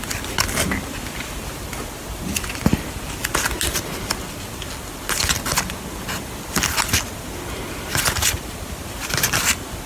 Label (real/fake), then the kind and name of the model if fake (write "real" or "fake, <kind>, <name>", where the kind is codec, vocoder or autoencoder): real